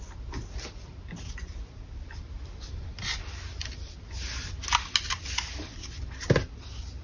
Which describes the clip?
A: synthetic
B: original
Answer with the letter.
B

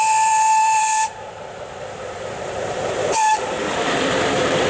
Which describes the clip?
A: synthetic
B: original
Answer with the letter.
A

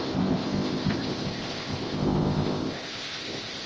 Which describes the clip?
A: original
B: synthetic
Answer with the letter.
B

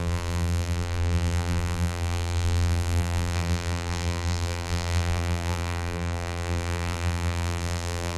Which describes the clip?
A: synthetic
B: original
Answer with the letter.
A